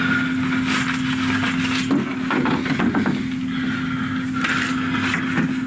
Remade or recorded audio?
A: recorded